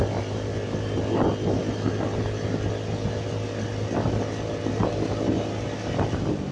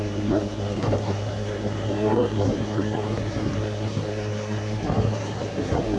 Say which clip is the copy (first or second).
second